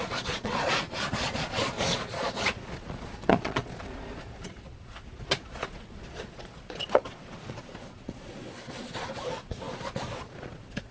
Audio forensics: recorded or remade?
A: remade